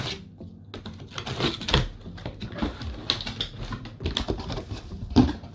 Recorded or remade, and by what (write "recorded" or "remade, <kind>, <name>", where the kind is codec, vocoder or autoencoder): recorded